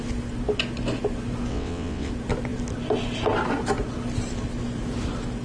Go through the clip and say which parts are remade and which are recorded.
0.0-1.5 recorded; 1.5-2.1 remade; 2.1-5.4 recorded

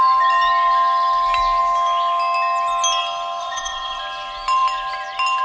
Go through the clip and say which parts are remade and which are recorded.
0.0-3.4 recorded; 3.4-4.0 remade; 4.0-5.4 recorded

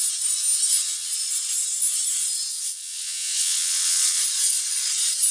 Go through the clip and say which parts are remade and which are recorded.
0.0-2.5 recorded; 2.5-4.2 remade; 4.2-5.3 recorded

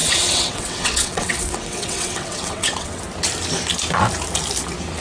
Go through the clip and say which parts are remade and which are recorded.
0.0-3.0 remade; 3.0-5.0 recorded

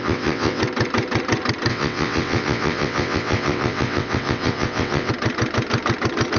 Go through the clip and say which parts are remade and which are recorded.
0.0-0.6 remade; 0.6-1.7 recorded; 1.7-5.1 remade; 5.1-6.4 recorded

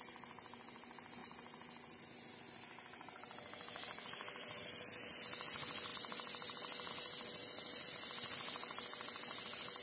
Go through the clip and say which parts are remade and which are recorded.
0.0-9.8 recorded

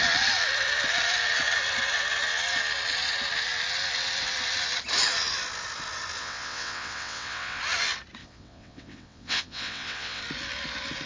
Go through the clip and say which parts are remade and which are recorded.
0.0-6.2 recorded; 6.2-7.6 remade; 7.6-8.2 recorded; 8.2-10.2 remade; 10.2-11.1 recorded